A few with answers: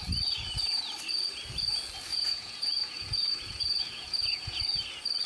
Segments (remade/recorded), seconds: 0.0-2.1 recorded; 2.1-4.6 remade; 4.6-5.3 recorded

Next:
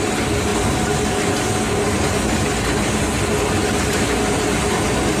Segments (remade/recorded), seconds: 0.0-5.2 recorded

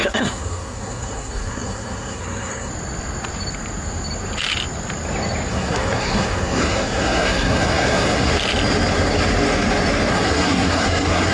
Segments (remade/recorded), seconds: 0.0-2.7 remade; 2.7-5.5 recorded; 5.5-8.3 remade; 8.3-10.1 recorded; 10.1-11.3 remade

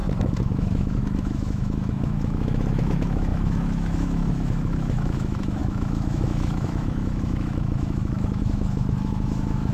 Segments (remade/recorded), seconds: 0.0-9.7 remade

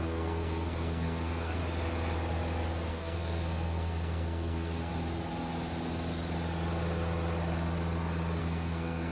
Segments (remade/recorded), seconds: 0.0-1.6 remade; 1.6-2.9 recorded; 2.9-4.9 remade; 4.9-8.4 recorded; 8.4-9.1 remade

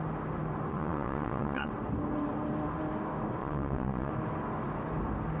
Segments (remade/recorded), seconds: 0.0-0.7 recorded; 0.7-1.7 remade; 1.7-3.4 recorded; 3.4-4.1 remade; 4.1-5.4 recorded